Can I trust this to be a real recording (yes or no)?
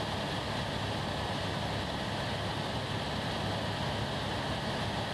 yes